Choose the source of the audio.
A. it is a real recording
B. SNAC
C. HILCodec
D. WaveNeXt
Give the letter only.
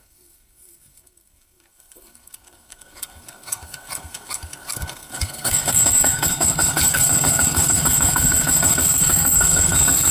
B